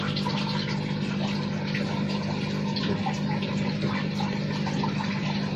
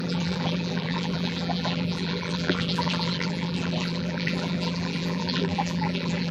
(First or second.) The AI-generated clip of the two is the second